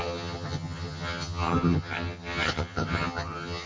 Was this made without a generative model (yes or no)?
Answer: no